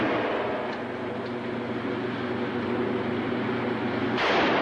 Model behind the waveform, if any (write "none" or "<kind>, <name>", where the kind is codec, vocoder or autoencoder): none